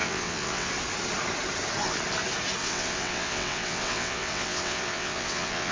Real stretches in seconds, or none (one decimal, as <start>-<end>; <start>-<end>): 0.7-2.6